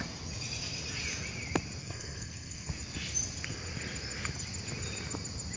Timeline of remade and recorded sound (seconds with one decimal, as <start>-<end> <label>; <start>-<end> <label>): 0.0-1.8 recorded; 1.8-2.7 remade; 2.7-5.6 recorded